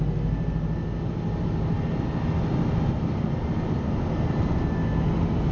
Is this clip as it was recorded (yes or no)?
yes